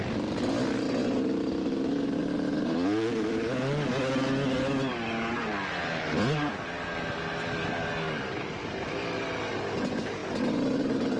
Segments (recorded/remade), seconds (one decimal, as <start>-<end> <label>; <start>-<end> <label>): 0.0-11.2 recorded